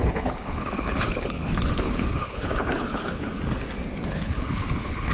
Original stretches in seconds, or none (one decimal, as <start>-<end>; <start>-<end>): 3.3-4.1